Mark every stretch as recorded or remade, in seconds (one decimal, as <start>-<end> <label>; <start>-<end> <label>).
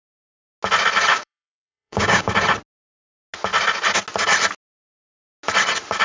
0.0-1.1 recorded; 1.1-2.3 remade; 2.3-6.0 recorded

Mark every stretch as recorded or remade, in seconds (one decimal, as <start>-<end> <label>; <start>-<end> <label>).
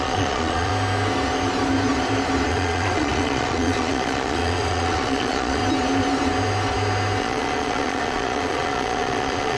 0.0-0.7 remade; 0.7-2.5 recorded; 2.5-5.6 remade; 5.6-7.2 recorded; 7.2-9.6 remade